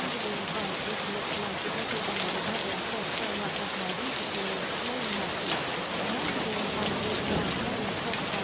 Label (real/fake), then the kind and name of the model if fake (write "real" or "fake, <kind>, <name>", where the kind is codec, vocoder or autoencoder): real